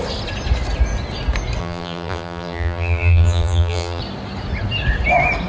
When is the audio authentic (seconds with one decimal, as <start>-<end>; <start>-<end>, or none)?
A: 0.0-1.6; 4.0-5.5